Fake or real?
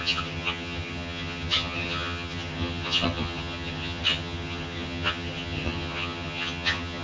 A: fake